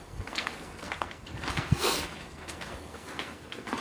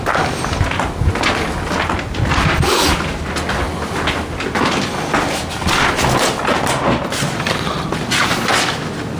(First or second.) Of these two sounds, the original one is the second